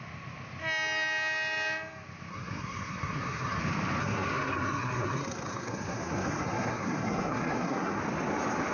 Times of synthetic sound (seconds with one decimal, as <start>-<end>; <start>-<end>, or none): 2.3-3.6; 4.0-8.0